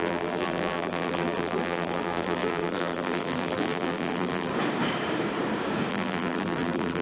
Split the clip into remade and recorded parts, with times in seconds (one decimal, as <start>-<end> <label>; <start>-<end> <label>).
0.0-4.5 remade; 4.5-5.9 recorded; 5.9-7.0 remade